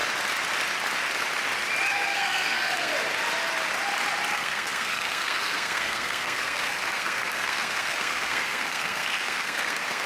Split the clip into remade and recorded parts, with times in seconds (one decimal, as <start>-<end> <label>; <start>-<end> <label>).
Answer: 0.0-1.9 recorded; 1.9-2.9 remade; 2.9-4.3 recorded; 4.3-10.1 remade